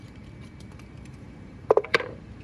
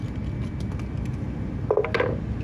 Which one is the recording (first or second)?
second